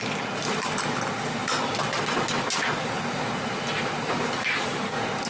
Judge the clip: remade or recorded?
recorded